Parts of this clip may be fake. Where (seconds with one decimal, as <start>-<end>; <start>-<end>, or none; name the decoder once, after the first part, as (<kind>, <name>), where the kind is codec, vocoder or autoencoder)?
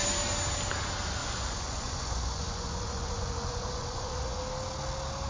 1.2-4.4 (vocoder, Vocos)